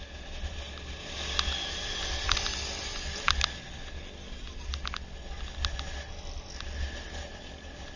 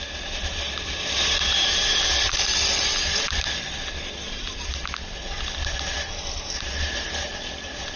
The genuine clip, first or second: first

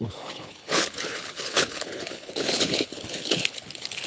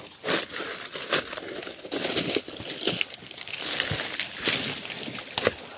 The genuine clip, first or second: second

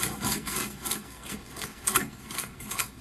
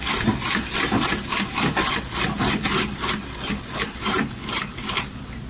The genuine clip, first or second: second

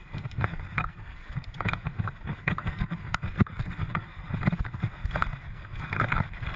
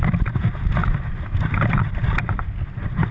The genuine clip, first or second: second